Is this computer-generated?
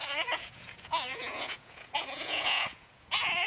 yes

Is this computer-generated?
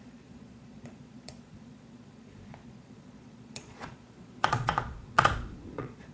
yes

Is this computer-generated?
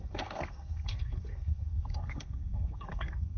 yes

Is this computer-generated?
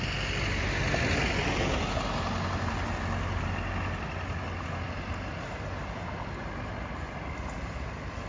no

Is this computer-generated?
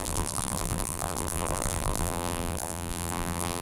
yes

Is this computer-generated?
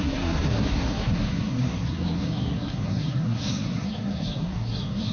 yes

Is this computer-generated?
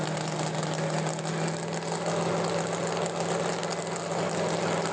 no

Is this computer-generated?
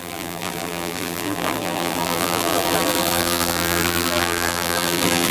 yes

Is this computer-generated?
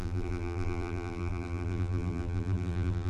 yes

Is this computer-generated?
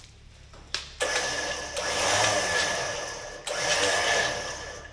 no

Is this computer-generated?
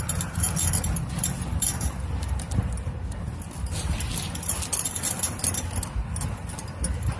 no